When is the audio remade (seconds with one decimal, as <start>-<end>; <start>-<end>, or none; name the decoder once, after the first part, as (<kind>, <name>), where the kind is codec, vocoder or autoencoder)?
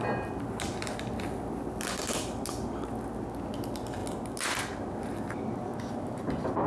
none